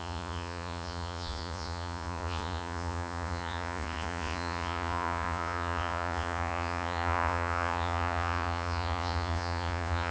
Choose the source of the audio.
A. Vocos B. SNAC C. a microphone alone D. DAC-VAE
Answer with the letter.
A